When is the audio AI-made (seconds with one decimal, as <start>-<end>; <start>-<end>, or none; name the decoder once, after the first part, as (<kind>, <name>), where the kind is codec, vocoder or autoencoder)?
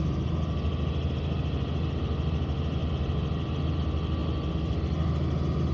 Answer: none